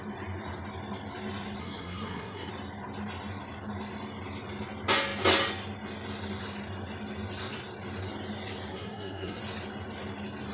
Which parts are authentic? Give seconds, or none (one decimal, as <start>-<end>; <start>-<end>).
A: 0.0-1.6; 2.5-8.7; 9.4-10.5